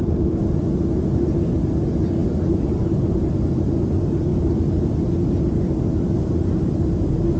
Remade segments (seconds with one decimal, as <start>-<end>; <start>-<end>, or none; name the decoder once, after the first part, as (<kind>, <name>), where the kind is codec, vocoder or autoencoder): none